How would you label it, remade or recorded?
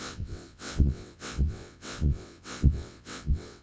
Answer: remade